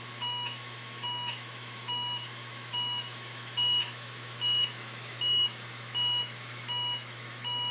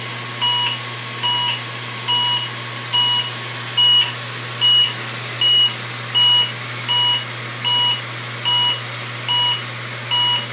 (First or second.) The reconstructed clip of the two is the first